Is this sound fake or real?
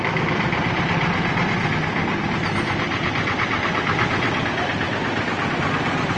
real